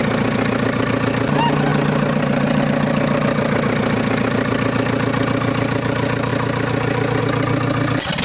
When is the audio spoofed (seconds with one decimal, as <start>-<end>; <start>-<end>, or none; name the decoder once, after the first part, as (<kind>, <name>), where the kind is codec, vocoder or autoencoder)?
1.7-2.6 (vocoder, BigVGAN v2)